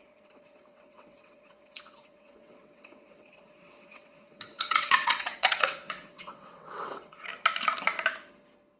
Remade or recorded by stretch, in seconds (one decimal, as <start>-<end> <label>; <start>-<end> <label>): 0.0-7.3 remade; 7.3-8.8 recorded